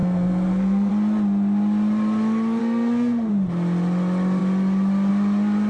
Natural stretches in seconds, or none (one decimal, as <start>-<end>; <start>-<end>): 0.9-2.6; 3.3-5.7